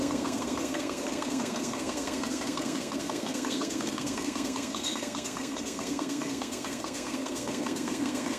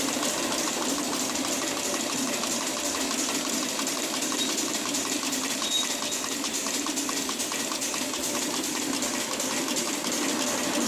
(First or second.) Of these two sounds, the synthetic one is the first